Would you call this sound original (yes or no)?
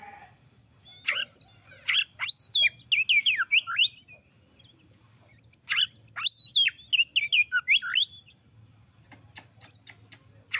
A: yes